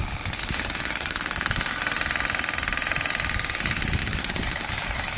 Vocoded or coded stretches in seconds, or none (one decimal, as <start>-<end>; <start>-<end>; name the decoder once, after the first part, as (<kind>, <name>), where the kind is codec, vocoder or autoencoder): 0.4-1.8 (codec, DAC); 4.0-5.2